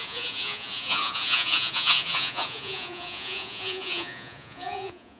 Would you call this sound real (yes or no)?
no